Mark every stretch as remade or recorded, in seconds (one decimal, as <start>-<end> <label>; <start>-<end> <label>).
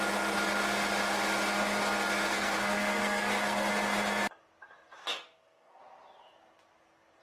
0.0-2.3 recorded; 2.3-3.7 remade; 3.7-5.0 recorded; 5.0-5.8 remade; 5.8-7.2 recorded